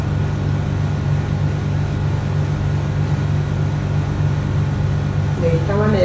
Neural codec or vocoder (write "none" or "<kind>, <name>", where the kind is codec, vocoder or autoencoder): none